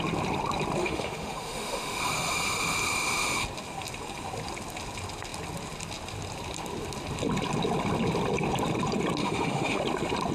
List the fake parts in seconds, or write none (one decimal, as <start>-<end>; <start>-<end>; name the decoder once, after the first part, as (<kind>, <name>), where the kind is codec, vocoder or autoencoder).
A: 0.8-2.0 (autoencoder, DAC-VAE); 9.2-9.8